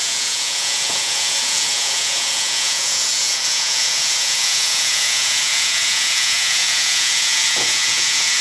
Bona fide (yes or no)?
no